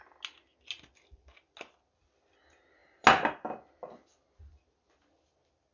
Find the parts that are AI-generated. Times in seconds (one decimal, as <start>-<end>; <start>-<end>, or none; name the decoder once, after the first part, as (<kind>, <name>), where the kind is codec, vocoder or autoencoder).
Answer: none